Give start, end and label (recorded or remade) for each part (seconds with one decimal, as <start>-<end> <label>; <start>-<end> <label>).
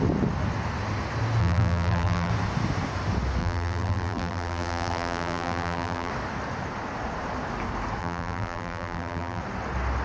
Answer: 0.0-1.4 recorded; 1.4-2.3 remade; 2.3-3.4 recorded; 3.4-6.1 remade; 6.1-8.0 recorded; 8.0-9.4 remade; 9.4-10.0 recorded